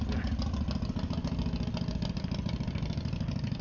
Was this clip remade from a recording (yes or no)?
no